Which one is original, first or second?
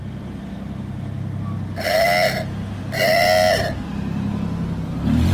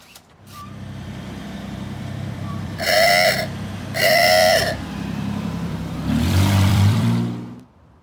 first